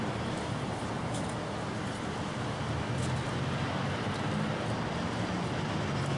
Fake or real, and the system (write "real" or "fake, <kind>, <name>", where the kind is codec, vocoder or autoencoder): real